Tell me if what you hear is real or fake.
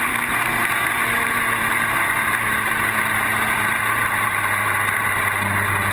fake